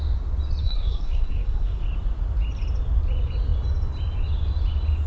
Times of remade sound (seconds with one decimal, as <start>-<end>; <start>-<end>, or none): 0.6-1.8